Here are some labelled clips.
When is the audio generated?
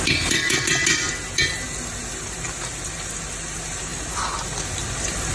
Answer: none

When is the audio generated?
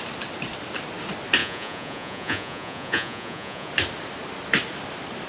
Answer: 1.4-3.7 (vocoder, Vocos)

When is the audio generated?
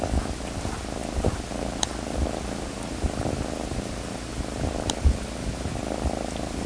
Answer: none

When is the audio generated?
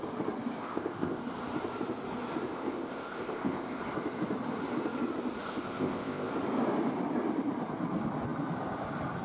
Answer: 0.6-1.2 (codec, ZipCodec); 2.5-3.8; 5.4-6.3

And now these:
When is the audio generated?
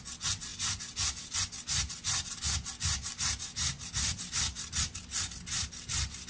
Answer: none